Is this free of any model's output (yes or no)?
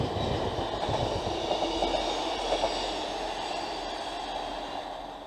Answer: yes